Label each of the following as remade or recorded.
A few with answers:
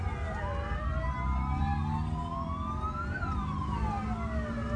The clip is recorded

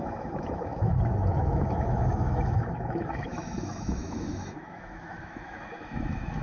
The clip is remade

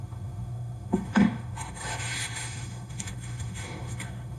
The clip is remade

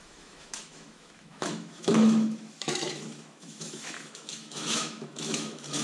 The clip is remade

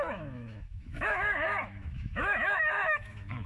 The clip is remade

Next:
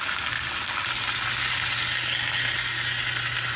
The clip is recorded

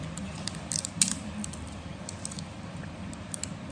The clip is recorded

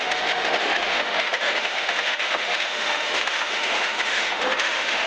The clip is remade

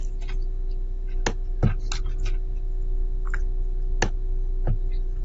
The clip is recorded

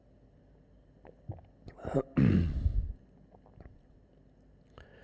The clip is recorded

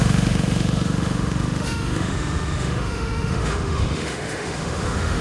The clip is remade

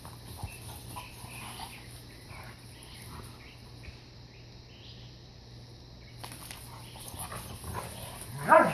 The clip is recorded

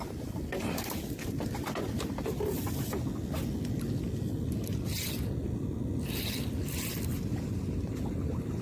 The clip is recorded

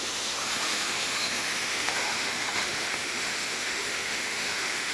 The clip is remade